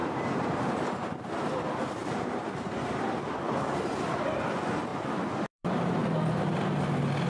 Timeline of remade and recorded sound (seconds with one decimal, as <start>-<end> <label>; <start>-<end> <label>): 0.0-1.3 remade; 1.3-2.0 recorded; 2.0-4.5 remade; 4.5-4.9 recorded; 4.9-6.0 remade; 6.0-7.3 recorded